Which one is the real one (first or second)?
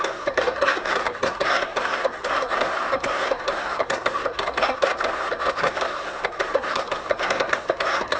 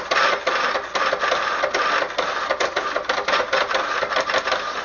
second